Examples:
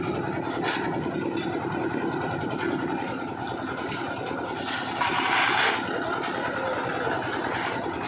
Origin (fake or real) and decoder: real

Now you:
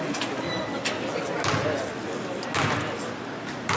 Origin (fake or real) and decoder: real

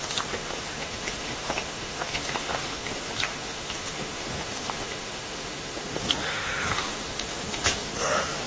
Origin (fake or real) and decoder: fake, autoencoder, DAC-VAE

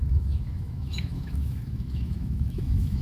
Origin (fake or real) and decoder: fake, autoencoder, DAC-VAE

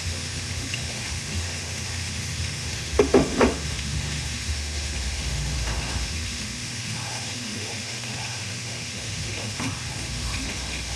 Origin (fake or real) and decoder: fake, autoencoder, DAC-VAE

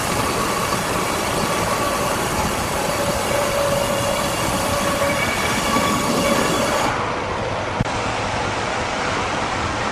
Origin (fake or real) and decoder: real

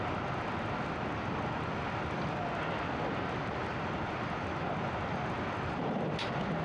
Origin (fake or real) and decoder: real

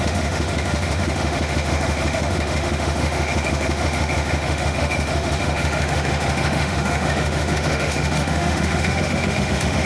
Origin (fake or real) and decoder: fake, autoencoder, DAC-VAE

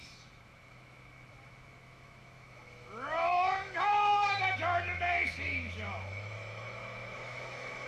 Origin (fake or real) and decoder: fake, autoencoder, DAC-VAE